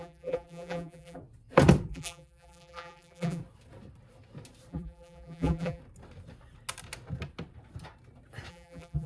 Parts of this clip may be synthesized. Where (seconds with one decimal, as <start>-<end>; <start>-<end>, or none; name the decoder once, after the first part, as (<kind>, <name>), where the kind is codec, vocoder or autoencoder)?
0.0-1.2 (vocoder, BigVGAN v2); 1.9-3.4; 4.7-5.8; 8.5-9.1